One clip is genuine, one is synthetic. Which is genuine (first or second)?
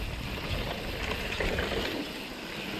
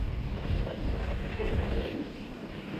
first